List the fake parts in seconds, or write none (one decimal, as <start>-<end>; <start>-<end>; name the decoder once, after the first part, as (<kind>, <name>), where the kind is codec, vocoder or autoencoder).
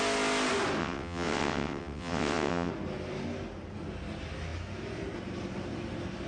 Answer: 0.8-2.7 (vocoder, WaveNeXt)